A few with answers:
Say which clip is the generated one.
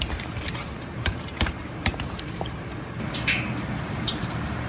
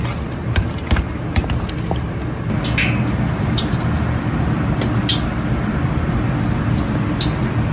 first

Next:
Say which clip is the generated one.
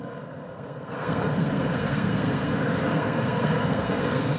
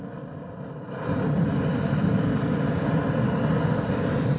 first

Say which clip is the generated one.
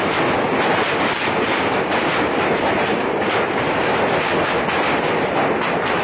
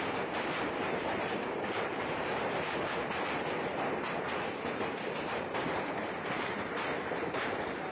second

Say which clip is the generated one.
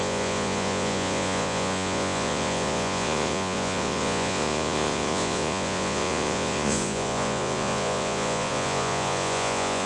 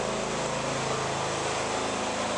first